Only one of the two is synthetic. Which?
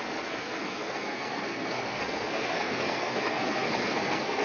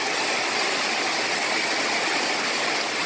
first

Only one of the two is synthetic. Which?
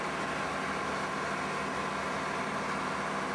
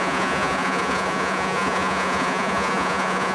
second